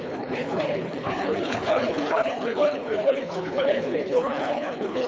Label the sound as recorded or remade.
remade